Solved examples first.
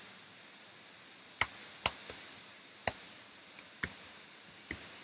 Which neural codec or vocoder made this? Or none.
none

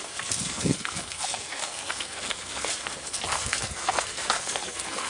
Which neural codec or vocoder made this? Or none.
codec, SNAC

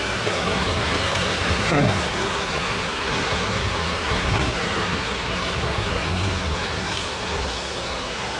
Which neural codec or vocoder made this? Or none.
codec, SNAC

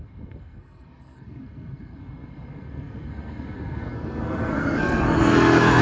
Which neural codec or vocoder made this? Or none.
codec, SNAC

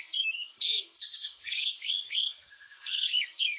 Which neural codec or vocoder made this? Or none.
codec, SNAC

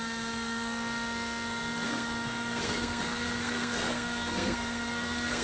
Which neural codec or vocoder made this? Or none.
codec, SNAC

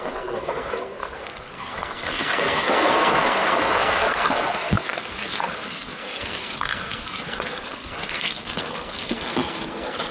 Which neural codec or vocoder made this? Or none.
codec, SNAC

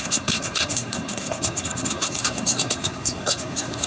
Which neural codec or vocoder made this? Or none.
codec, SNAC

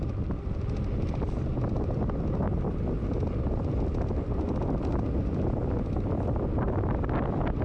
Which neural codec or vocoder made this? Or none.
none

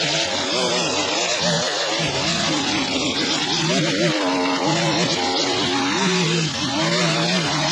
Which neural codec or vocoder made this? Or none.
none